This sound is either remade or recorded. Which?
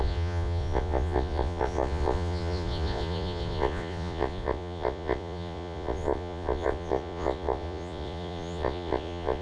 remade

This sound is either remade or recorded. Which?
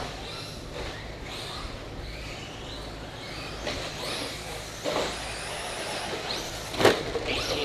recorded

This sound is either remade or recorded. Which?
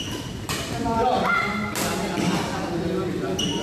recorded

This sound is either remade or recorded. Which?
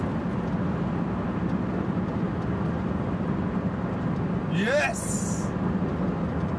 recorded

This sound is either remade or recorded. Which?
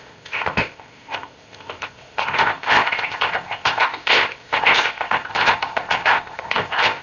remade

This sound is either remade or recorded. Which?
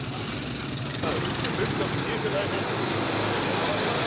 recorded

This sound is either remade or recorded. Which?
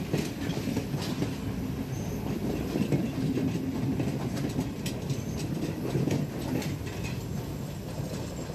recorded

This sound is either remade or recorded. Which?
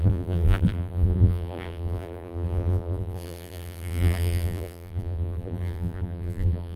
remade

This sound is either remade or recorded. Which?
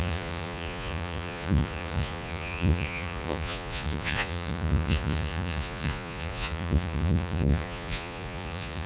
remade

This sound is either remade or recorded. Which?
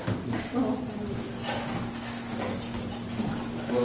recorded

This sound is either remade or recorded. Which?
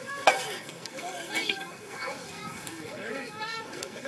remade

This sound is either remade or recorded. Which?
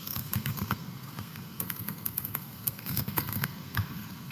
remade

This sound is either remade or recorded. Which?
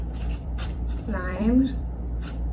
remade